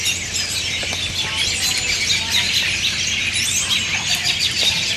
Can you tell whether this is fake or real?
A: real